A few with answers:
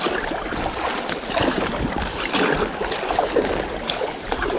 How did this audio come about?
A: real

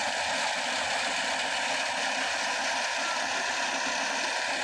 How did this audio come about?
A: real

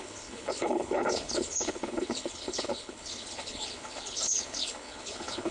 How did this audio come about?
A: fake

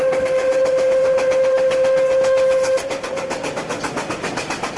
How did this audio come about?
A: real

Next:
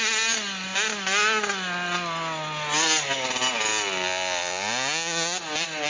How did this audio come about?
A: real